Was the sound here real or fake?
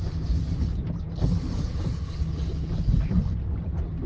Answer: real